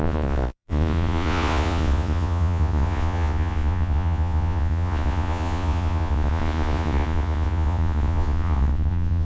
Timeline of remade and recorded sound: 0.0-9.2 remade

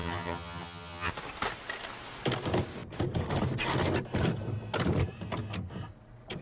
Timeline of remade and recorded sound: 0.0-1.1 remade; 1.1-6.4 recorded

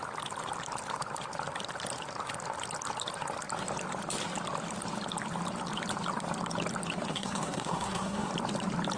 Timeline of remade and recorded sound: 0.0-7.1 recorded; 7.1-8.3 remade; 8.3-9.0 recorded

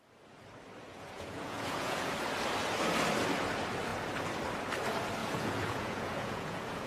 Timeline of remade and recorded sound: 0.0-0.9 recorded; 0.9-2.1 remade; 2.1-5.2 recorded; 5.2-6.9 remade